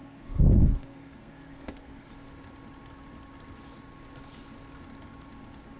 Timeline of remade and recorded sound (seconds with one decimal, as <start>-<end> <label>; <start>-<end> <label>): 0.0-2.1 remade; 2.1-5.8 recorded